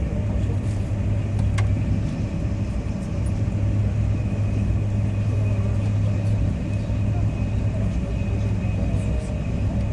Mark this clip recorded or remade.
recorded